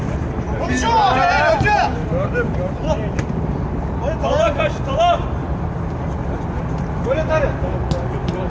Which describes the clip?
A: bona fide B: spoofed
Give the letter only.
A